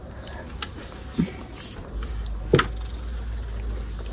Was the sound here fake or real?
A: real